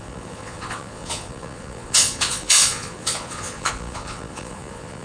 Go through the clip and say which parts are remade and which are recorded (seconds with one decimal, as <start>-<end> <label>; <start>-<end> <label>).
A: 0.0-5.0 remade